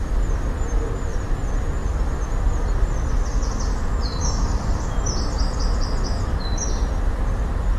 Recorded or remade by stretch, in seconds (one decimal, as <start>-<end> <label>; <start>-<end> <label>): 0.0-1.8 recorded; 1.8-4.9 remade; 4.9-7.8 recorded

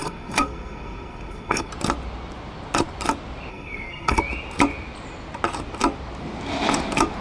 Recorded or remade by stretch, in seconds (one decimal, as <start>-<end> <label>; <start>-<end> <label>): 0.0-1.7 remade; 1.7-3.5 recorded; 3.5-4.2 remade; 4.2-7.2 recorded

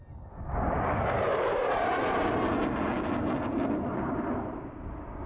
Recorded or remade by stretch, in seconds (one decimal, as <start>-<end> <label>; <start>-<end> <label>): 0.0-1.3 recorded; 1.3-2.0 remade; 2.0-3.9 recorded; 3.9-4.6 remade; 4.6-5.3 recorded

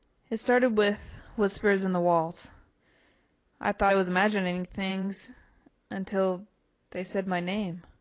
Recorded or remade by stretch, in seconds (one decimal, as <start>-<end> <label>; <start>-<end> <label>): 0.0-4.9 recorded; 4.9-5.6 remade; 5.6-8.0 recorded

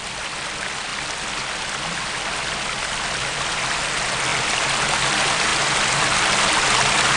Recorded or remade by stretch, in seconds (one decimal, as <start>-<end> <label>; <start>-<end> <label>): 0.0-7.2 recorded

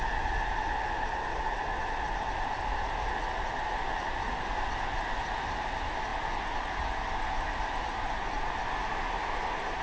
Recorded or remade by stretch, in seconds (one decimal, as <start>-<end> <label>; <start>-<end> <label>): 0.0-9.8 recorded